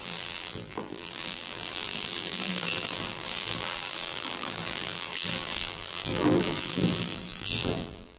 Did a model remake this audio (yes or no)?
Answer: yes